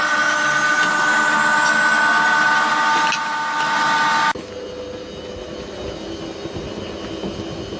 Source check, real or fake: real